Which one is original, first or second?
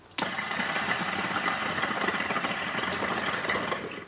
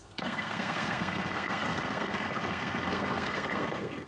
first